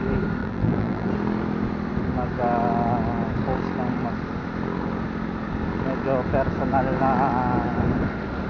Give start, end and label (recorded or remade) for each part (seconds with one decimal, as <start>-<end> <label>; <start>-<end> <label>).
0.0-0.4 recorded; 0.4-1.1 remade; 1.1-8.5 recorded